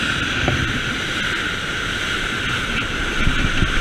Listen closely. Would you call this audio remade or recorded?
recorded